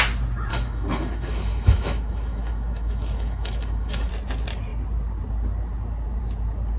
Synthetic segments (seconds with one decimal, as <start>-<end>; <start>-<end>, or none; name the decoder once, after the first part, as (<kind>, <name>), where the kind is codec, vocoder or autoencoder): 0.5-4.1 (autoencoder, DAC-VAE)